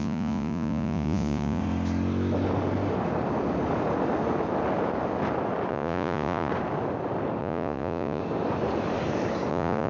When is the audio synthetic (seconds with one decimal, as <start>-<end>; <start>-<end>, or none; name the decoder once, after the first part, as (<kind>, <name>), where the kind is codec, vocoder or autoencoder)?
0.0-1.6 (vocoder, Vocos); 5.7-6.5; 7.4-8.2; 9.5-9.9